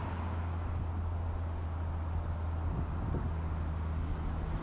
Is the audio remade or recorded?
recorded